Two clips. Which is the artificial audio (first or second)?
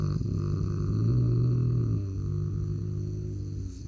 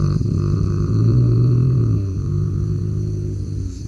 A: second